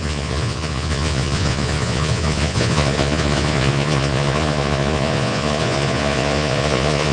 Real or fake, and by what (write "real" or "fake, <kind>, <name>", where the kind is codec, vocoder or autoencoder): fake, vocoder, Vocos